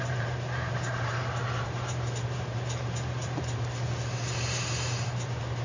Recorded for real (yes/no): no